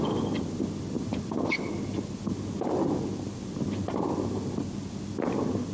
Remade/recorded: recorded